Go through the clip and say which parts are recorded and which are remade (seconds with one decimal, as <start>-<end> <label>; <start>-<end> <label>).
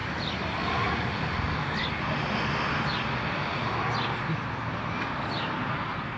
0.0-6.2 recorded